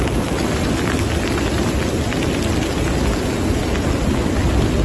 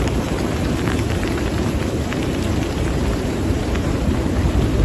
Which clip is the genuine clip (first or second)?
first